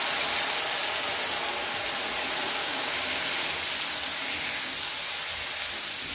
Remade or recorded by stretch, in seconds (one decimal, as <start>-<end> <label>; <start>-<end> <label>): 0.0-2.6 recorded; 2.6-3.2 remade; 3.2-6.1 recorded